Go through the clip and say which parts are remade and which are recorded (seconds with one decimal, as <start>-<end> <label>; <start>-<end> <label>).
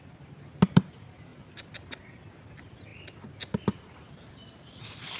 0.0-5.2 recorded